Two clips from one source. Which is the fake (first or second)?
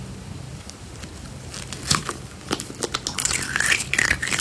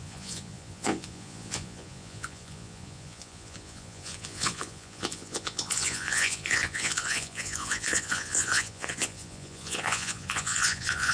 second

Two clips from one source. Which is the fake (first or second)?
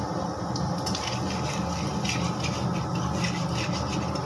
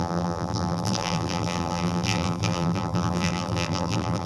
second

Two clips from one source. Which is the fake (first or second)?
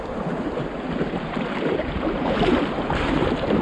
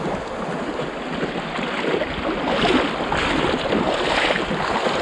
first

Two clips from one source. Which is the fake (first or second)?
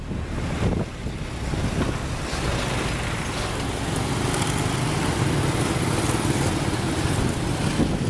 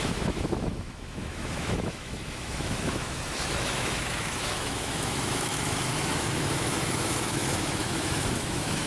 second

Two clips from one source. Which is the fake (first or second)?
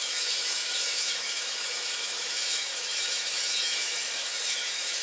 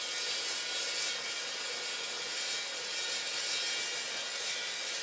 first